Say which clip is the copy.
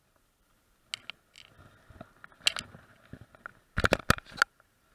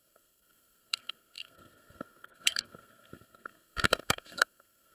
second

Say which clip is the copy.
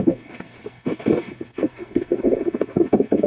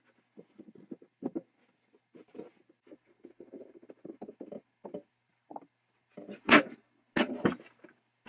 first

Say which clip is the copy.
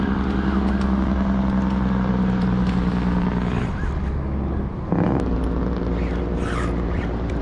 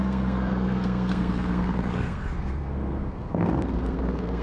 second